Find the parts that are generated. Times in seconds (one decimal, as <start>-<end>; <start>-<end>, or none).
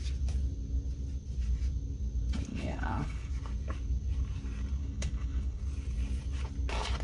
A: 2.5-3.3; 4.8-5.6